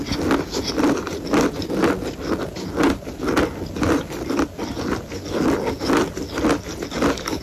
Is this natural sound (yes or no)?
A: yes